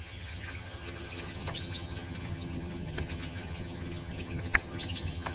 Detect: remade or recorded remade